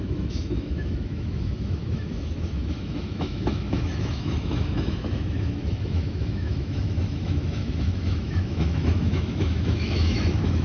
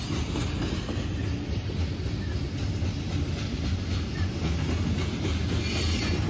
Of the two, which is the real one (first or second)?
second